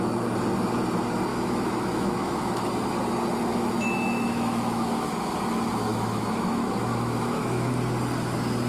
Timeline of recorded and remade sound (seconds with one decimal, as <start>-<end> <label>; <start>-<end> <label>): 0.0-1.3 recorded; 1.3-2.7 remade; 2.7-3.5 recorded; 3.5-5.3 remade; 5.3-5.9 recorded; 5.9-7.7 remade; 7.7-8.7 recorded